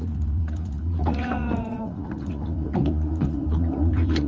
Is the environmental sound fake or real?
fake